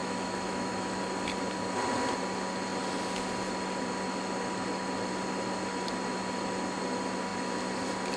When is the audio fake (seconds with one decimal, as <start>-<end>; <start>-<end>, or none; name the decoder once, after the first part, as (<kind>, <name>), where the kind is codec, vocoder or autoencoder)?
0.0-1.0 (autoencoder, DAC-VAE)